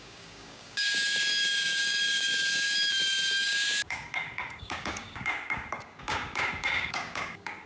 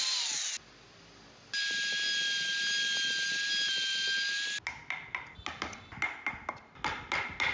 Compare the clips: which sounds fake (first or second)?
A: first